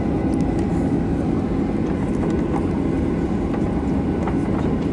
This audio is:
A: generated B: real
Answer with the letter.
B